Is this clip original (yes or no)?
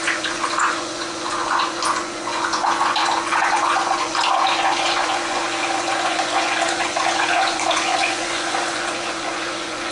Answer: no